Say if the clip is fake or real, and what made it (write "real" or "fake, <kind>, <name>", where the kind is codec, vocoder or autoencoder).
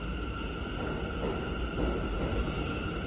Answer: real